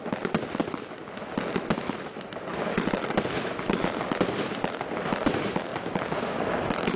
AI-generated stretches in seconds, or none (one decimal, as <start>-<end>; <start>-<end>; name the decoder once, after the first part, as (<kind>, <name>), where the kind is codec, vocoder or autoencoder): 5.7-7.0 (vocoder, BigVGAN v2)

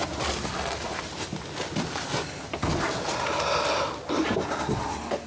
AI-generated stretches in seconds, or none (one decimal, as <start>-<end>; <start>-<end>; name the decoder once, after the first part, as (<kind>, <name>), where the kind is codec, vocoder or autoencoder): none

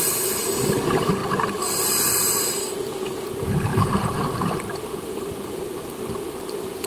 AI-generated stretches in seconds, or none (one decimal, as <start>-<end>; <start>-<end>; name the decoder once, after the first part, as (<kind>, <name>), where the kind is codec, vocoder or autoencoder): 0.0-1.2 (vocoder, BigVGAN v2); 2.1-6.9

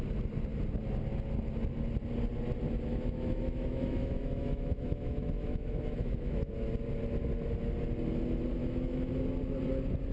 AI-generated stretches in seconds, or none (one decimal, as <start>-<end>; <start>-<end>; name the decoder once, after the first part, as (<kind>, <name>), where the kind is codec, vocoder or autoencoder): 2.9-6.5 (autoencoder, DAC-VAE); 8.6-9.1

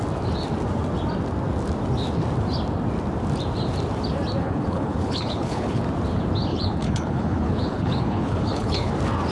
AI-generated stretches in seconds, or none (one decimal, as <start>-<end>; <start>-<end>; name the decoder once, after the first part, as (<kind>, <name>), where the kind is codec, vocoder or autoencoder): 4.4-5.8 (codec, HILCodec); 6.5-8.9

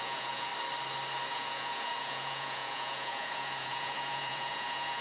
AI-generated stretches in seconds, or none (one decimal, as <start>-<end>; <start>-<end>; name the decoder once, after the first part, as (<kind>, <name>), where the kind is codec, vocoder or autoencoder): 0.0-0.5 (vocoder, Vocos); 1.3-5.0